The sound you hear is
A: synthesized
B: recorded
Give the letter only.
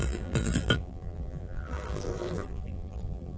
A